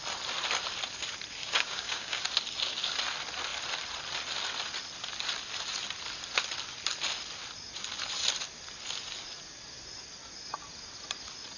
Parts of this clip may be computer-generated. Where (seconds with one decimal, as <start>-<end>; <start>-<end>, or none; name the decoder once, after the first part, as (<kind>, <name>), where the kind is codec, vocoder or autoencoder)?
1.4-2.2 (codec, DAC)